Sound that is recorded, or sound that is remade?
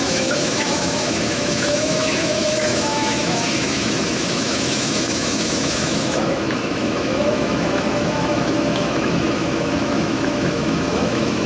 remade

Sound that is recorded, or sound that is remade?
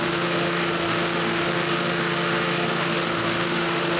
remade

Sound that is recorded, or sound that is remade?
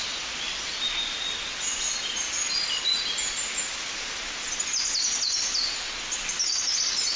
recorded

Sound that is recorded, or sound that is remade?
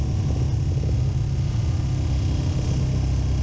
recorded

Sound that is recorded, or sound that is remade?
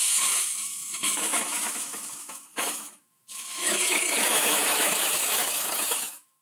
remade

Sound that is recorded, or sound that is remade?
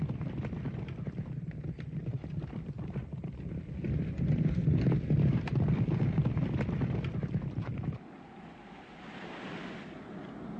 recorded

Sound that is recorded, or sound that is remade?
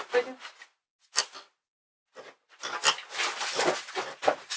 recorded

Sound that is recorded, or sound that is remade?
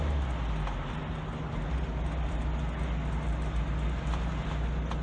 recorded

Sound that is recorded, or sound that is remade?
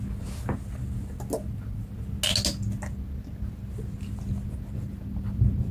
recorded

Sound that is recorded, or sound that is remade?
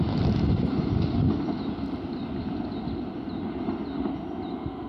recorded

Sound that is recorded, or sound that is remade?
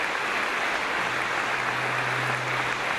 recorded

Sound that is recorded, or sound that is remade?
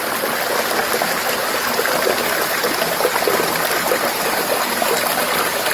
recorded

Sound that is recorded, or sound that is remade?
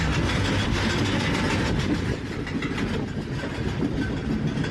recorded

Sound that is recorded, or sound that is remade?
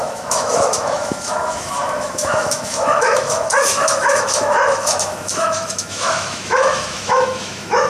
remade